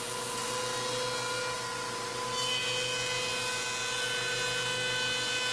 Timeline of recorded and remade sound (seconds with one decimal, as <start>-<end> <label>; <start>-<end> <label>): 0.0-5.5 recorded